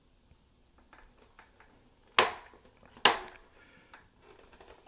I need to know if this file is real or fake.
real